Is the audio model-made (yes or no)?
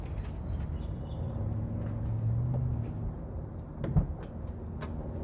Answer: no